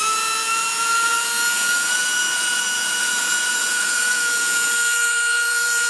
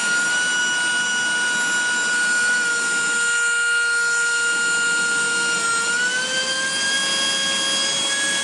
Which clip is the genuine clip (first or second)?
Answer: second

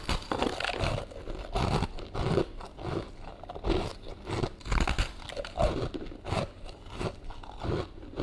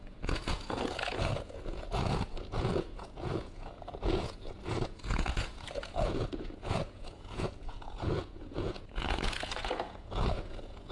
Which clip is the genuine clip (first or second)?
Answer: first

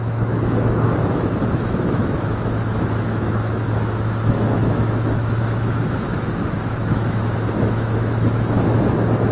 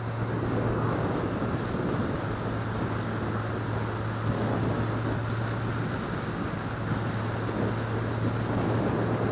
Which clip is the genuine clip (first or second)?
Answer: second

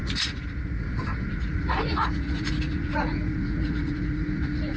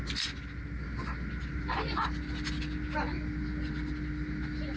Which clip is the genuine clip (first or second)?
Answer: second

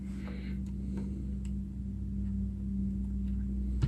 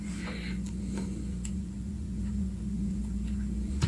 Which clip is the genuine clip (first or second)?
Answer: first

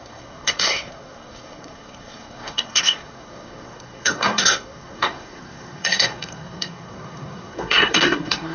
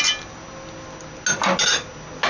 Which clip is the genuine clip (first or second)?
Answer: second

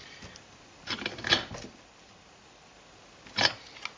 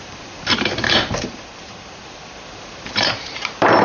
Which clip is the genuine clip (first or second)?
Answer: first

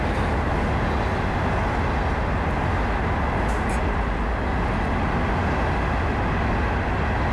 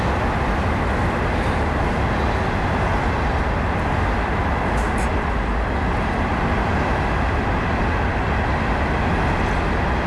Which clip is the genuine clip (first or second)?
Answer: first